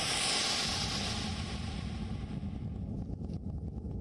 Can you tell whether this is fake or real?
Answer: real